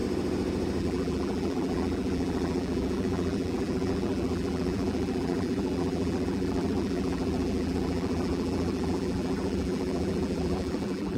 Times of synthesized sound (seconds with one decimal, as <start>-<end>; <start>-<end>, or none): 0.8-11.2